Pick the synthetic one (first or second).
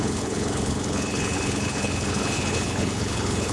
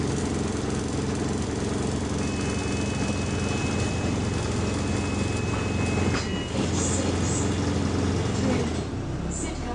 first